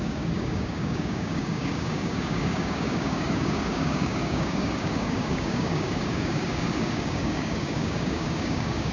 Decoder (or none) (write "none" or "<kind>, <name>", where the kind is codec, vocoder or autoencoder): codec, DAC